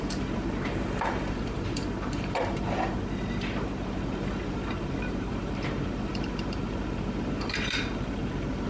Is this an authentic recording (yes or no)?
no